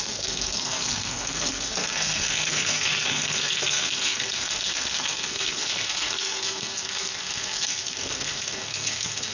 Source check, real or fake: fake